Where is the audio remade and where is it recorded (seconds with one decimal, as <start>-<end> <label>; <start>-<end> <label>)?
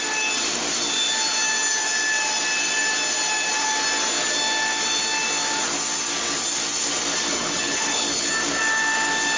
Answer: 0.0-7.3 recorded; 7.3-8.3 remade; 8.3-9.4 recorded